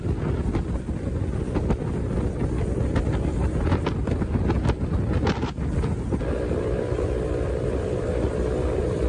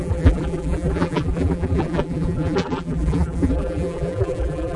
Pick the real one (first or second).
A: first